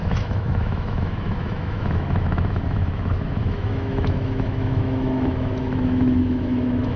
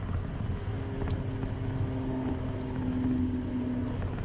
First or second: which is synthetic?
first